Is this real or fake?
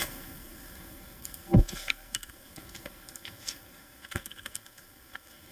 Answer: fake